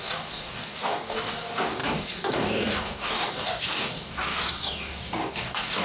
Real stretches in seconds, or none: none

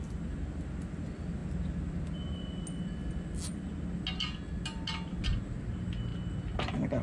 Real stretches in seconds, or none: 0.0-7.0